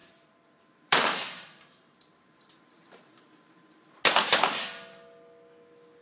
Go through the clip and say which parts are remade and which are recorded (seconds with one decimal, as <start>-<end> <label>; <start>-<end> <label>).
0.0-3.6 remade; 3.6-6.0 recorded